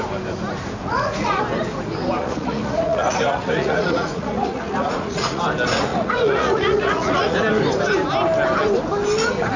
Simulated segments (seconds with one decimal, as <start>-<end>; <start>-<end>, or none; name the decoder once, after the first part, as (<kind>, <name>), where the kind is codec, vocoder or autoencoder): 0.8-1.4 (vocoder, Vocos); 2.2-5.4; 5.9-7.4